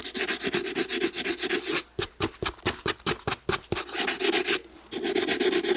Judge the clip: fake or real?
real